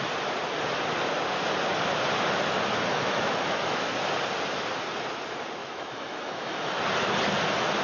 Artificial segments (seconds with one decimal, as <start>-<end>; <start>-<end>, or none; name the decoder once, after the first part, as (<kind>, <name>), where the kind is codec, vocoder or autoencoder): 2.9-3.9 (autoencoder, DAC-VAE); 5.6-6.8